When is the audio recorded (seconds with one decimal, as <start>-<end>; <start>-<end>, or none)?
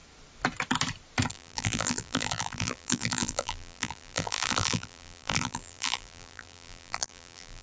0.0-1.3